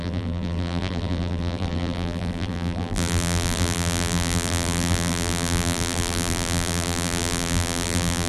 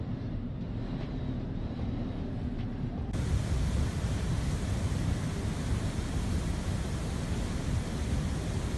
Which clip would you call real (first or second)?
second